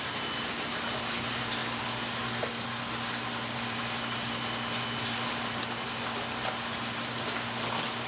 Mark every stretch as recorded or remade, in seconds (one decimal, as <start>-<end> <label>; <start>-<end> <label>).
0.0-8.1 recorded